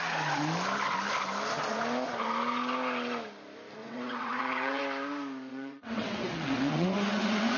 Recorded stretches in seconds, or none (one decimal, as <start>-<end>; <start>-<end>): 0.0-3.8; 4.8-5.5